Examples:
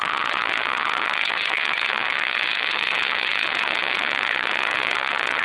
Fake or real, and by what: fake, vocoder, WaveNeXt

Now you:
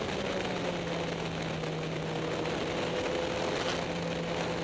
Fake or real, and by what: real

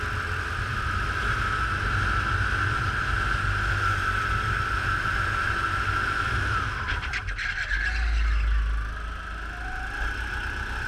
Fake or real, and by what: real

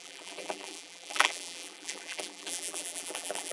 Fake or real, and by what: fake, vocoder, BigVGAN v2